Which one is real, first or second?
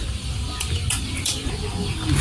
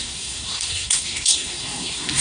first